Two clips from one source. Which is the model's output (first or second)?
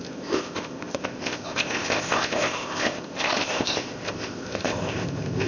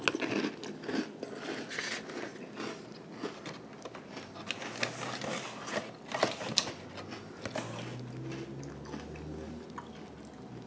first